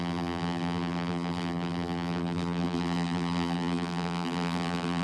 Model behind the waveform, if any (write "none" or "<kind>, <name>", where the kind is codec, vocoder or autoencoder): vocoder, BigVGAN v2